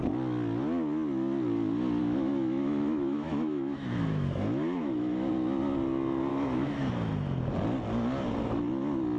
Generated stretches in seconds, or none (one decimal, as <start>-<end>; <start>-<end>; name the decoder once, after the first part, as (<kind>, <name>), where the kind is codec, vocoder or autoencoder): 2.0-5.3 (autoencoder, DAC-VAE); 6.3-6.9